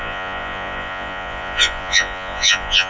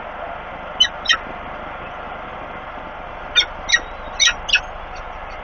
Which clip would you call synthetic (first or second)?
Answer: first